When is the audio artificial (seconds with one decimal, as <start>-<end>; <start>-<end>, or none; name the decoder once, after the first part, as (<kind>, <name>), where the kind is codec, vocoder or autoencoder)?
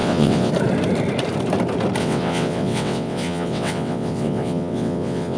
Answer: 0.0-0.5 (vocoder, WaveNeXt); 2.0-5.4